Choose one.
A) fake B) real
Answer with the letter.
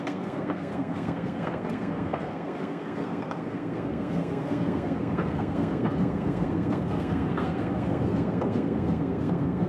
A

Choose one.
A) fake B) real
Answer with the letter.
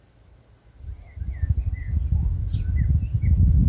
B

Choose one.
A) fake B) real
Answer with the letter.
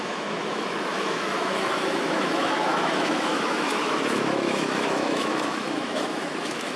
A